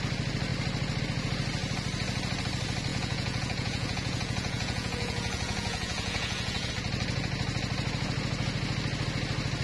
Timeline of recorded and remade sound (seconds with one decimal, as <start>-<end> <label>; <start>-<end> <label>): 0.0-2.9 recorded; 2.9-6.7 remade; 6.7-9.6 recorded